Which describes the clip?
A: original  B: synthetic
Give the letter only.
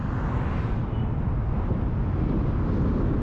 A